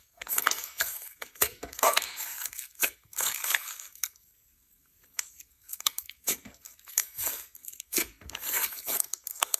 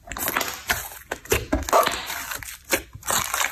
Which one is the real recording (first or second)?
second